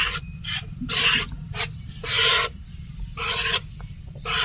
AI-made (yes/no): no